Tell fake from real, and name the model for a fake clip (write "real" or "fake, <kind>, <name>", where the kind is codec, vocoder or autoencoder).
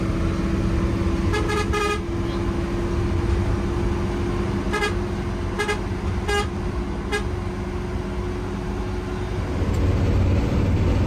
real